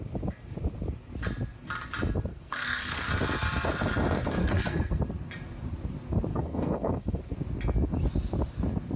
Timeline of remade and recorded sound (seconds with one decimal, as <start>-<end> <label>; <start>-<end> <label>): 0.0-2.3 recorded; 2.3-3.1 remade; 3.1-4.4 recorded; 4.4-5.0 remade; 5.0-6.3 recorded; 6.3-7.2 remade; 7.2-9.0 recorded